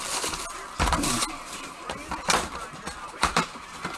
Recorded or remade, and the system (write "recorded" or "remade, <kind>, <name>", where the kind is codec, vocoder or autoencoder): remade, vocoder, BigVGAN v2